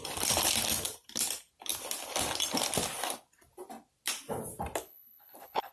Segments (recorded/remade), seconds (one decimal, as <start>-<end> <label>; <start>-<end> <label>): 0.0-4.8 recorded; 4.8-5.7 remade